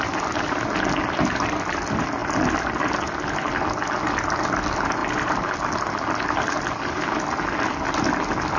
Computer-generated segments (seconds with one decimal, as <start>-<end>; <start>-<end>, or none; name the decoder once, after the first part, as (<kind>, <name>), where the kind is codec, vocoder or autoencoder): 5.0-5.5 (vocoder, BigVGAN v2)